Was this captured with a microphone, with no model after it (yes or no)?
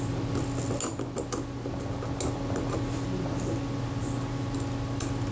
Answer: yes